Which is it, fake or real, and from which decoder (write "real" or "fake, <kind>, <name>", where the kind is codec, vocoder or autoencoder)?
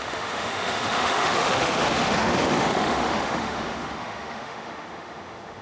fake, autoencoder, DAC-VAE